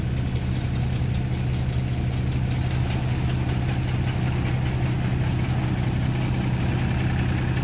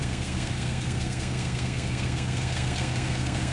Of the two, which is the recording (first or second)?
first